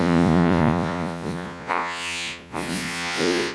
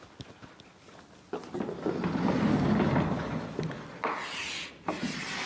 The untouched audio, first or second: second